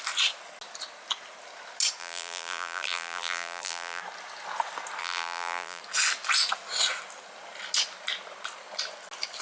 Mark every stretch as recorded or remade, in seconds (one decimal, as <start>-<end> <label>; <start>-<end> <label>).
0.0-2.0 recorded; 2.0-4.0 remade; 4.0-5.0 recorded; 5.0-5.8 remade; 5.8-9.4 recorded